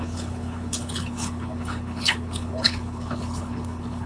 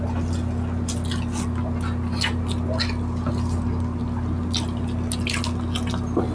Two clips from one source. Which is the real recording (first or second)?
second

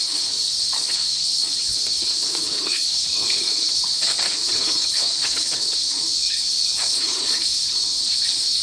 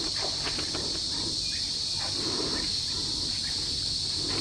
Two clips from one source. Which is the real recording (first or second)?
second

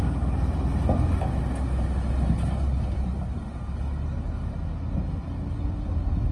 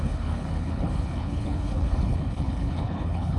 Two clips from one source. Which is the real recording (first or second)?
first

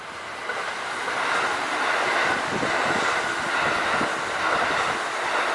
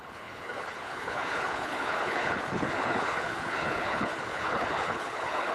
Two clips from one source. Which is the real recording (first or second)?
first